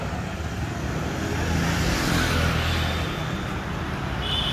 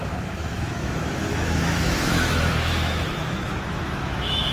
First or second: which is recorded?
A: first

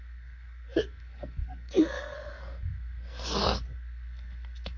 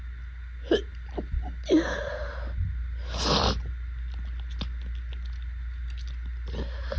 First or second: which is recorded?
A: second